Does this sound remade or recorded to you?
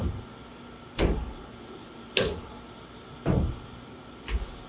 recorded